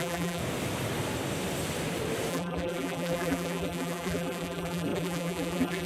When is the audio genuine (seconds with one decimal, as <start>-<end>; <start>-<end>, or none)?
0.4-2.3